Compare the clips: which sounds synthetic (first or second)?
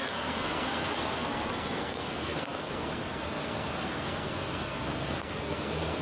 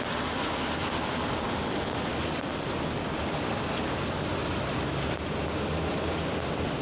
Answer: first